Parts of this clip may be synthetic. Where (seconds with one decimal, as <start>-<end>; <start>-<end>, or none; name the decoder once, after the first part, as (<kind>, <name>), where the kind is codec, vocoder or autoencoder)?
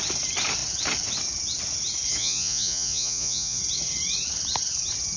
2.2-3.6 (vocoder, Vocos)